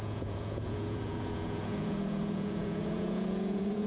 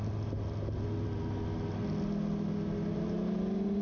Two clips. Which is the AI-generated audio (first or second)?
first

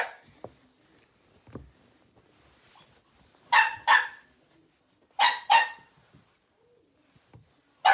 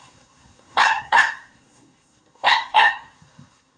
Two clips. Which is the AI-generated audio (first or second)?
second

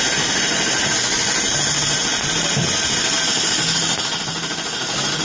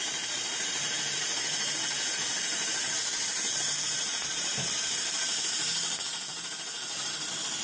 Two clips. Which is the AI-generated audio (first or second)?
second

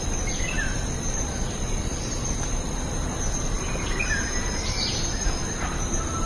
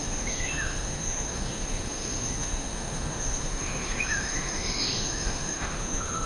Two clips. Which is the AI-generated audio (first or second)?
second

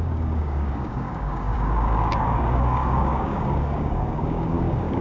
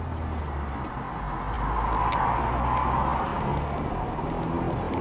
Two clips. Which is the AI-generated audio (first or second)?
first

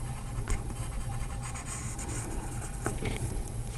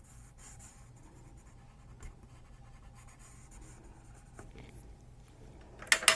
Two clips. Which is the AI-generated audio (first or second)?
first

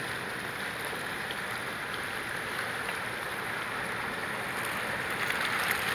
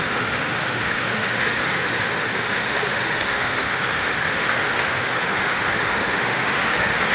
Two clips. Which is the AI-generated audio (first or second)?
second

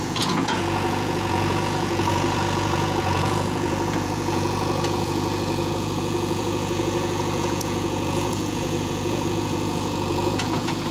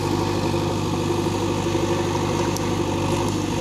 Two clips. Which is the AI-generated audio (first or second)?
first